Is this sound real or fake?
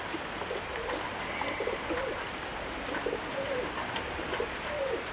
real